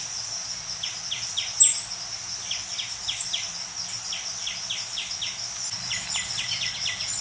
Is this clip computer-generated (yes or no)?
no